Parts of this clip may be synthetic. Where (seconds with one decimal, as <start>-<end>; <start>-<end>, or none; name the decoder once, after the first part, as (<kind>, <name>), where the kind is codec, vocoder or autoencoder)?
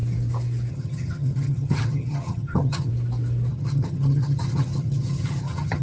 0.7-2.9 (vocoder, HiFi-GAN); 3.5-5.8